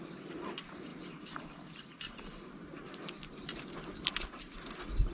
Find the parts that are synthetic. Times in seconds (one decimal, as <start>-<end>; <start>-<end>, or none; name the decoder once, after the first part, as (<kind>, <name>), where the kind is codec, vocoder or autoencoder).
0.9-4.0 (vocoder, BigVGAN v2)